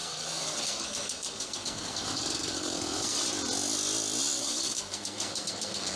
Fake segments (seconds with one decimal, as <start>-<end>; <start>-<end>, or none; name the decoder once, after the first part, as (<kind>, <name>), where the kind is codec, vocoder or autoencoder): 0.0-3.2 (codec, SNAC); 4.4-6.0